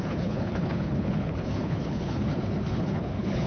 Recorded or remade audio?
remade